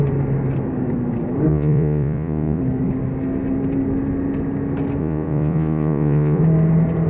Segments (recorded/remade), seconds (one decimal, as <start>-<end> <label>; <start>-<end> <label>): 0.0-1.5 recorded; 1.5-2.6 remade; 2.6-5.0 recorded; 5.0-6.4 remade; 6.4-7.1 recorded